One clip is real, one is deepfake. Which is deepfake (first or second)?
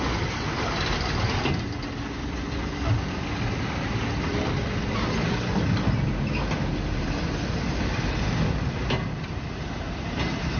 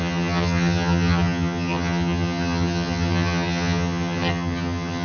second